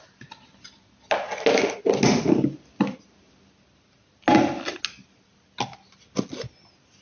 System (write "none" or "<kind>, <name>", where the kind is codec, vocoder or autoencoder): none